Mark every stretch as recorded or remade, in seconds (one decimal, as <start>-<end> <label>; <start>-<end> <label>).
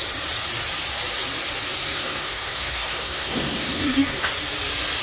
0.0-1.7 recorded; 1.7-4.3 remade; 4.3-5.0 recorded